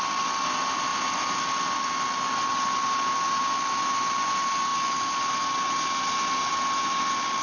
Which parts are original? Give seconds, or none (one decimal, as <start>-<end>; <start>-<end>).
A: 0.0-7.4